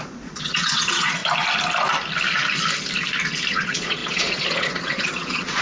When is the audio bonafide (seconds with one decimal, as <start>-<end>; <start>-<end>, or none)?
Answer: 1.2-3.5